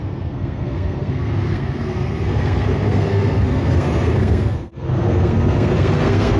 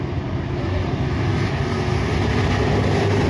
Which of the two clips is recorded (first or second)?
second